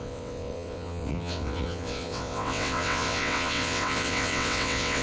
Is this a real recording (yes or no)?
no